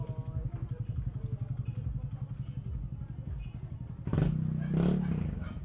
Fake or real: real